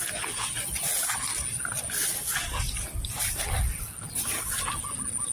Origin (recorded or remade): recorded